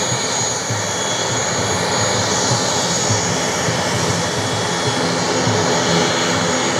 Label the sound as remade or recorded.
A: recorded